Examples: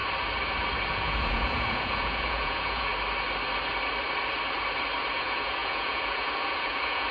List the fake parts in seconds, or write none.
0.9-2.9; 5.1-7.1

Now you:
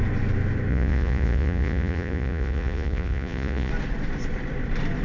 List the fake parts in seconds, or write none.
0.7-3.7